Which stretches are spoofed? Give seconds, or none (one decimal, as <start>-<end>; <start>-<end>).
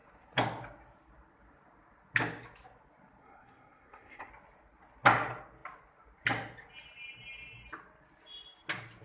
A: 3.2-4.3